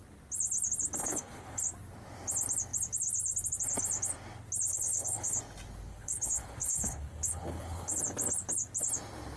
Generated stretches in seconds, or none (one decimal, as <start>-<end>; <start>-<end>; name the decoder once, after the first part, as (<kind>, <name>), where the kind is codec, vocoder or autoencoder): 1.0-1.6 (codec, HILCodec); 4.7-5.4; 5.9-8.0